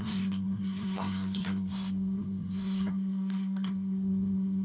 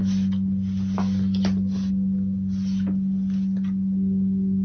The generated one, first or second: first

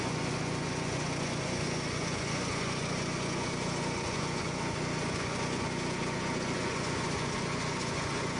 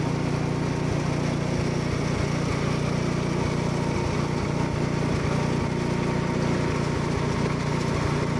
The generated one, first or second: first